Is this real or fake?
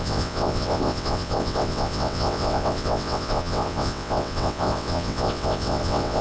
fake